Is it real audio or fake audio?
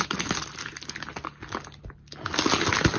real